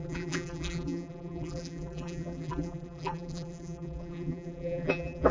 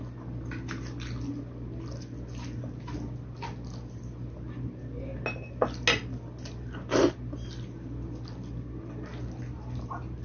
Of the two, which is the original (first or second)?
second